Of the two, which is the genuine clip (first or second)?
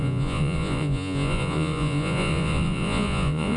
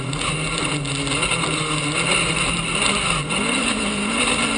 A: second